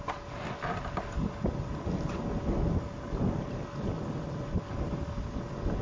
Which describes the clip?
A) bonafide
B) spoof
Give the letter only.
A